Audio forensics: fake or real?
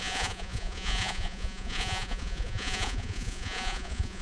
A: fake